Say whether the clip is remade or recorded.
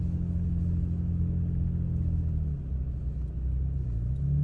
recorded